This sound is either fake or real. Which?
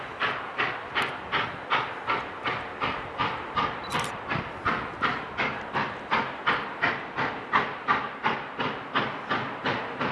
real